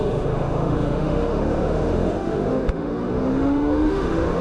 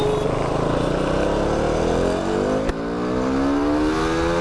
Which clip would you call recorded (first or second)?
second